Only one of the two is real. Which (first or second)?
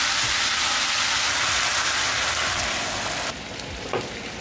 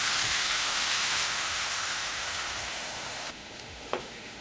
first